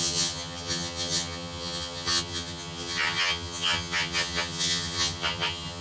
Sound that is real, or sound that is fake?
fake